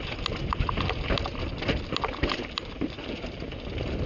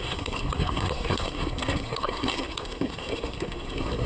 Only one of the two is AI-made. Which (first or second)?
second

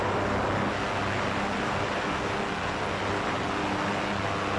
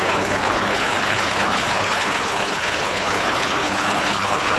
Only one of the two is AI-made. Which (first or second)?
second